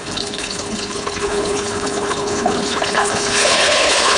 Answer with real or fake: fake